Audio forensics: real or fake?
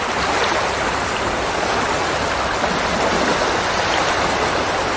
real